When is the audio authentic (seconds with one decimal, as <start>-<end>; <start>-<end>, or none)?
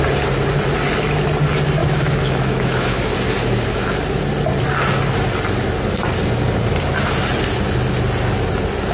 0.0-1.8; 3.0-8.9